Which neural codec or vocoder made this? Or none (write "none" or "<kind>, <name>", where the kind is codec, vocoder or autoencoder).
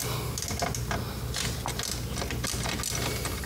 none